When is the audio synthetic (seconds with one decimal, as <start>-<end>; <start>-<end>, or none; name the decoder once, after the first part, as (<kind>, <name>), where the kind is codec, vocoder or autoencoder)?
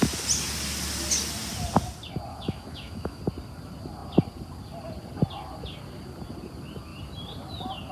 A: 2.3-3.2 (autoencoder, DAC-VAE)